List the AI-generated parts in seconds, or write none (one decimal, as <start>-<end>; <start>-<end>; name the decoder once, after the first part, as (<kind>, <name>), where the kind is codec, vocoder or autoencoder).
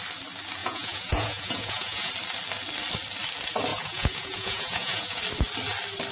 0.6-2.1 (vocoder, Vocos); 3.7-5.2